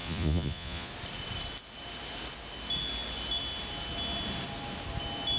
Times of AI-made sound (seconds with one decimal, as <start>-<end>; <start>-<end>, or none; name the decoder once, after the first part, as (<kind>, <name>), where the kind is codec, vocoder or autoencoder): 0.0-0.9 (vocoder, Vocos)